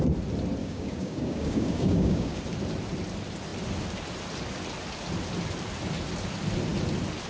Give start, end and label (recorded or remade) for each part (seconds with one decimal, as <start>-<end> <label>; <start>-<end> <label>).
0.0-0.6 recorded; 0.6-2.4 remade; 2.4-7.3 recorded